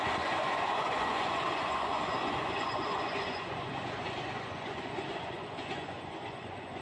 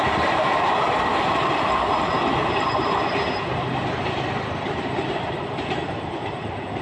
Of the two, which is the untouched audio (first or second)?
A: second